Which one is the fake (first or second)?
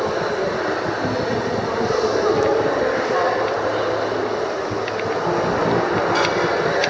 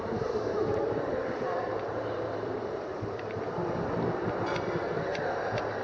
second